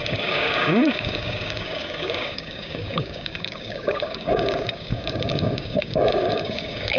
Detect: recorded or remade remade